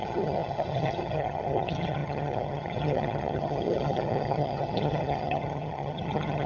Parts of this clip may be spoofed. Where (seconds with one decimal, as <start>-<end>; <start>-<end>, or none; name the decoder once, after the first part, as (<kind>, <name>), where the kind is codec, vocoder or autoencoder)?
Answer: 0.0-6.5 (vocoder, HiFi-GAN)